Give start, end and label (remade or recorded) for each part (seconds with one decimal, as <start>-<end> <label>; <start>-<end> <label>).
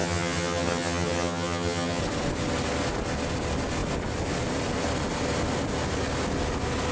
0.0-2.0 remade; 2.0-6.9 recorded